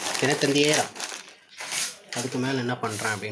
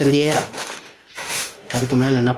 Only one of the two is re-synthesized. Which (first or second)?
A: second